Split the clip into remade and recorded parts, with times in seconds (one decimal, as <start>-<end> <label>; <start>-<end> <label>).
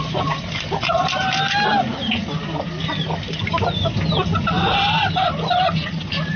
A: 0.0-6.4 recorded